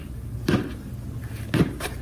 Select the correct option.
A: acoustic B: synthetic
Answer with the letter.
A